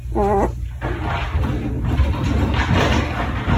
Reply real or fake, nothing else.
real